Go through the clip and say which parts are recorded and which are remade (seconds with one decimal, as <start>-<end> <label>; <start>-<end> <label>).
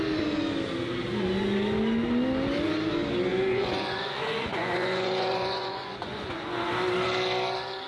0.0-3.3 recorded; 3.3-6.7 remade; 6.7-7.9 recorded